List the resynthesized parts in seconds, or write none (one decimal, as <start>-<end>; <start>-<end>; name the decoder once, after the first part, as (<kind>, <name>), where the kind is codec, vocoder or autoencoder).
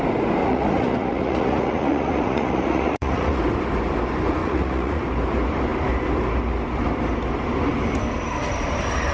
0.4-3.4 (vocoder, Vocos); 4.4-5.0